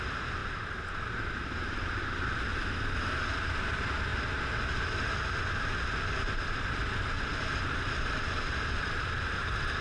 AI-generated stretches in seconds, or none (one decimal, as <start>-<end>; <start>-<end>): none